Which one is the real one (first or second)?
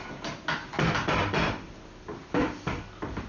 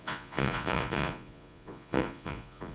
first